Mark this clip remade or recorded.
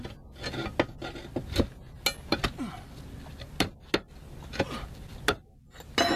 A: recorded